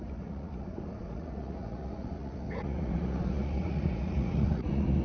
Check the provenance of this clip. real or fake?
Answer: fake